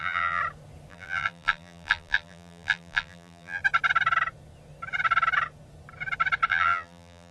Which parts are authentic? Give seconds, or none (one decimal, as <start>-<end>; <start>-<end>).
0.4-0.9; 3.6-6.5